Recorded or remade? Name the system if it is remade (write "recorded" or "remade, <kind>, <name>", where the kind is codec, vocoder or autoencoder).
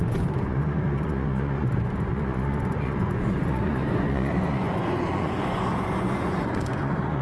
remade, vocoder, Vocos